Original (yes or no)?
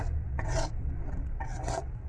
no